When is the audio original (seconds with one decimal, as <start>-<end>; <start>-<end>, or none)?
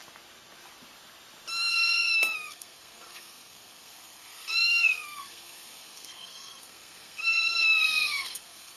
0.0-1.7